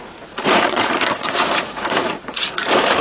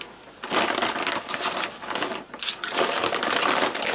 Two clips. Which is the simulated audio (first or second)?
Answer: first